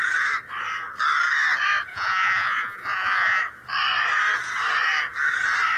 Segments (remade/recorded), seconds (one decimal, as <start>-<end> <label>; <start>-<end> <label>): 0.0-1.9 recorded; 1.9-3.4 remade; 3.4-5.8 recorded